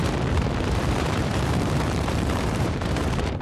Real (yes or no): no